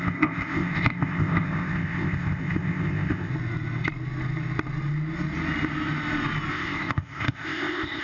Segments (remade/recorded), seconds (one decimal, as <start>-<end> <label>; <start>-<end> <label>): 0.0-3.3 remade; 3.3-6.5 recorded; 6.5-8.0 remade